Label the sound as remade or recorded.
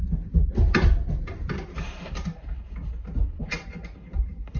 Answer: recorded